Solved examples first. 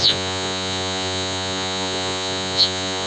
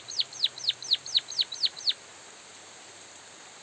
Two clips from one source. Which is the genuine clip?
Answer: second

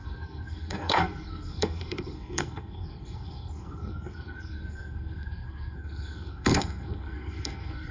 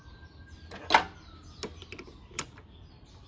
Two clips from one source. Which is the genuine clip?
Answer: second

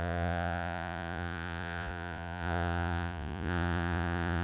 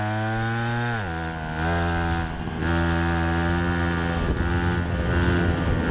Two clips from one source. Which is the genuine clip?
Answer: second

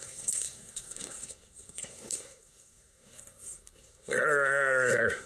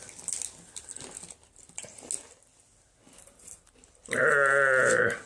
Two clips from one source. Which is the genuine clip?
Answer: second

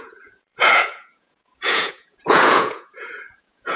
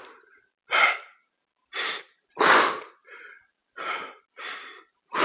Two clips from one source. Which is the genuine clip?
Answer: second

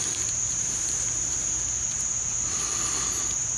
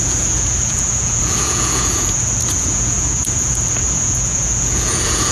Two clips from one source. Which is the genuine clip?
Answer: first